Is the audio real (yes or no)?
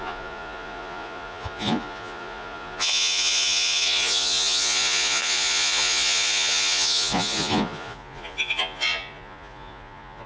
no